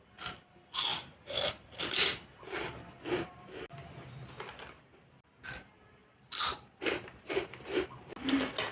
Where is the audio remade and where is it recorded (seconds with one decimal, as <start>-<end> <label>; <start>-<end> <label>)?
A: 0.0-6.0 recorded; 6.0-6.5 remade; 6.5-8.7 recorded